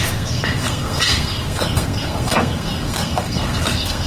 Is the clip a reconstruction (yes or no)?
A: yes